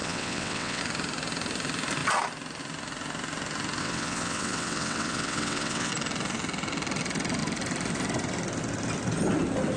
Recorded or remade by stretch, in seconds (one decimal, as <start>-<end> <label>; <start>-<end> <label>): 0.0-0.8 remade; 0.8-3.8 recorded; 3.8-5.9 remade; 5.9-9.8 recorded